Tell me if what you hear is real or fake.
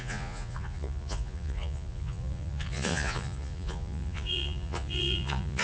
fake